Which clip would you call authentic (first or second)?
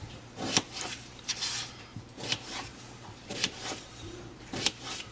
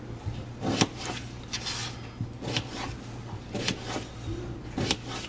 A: second